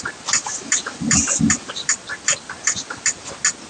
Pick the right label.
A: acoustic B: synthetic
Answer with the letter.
A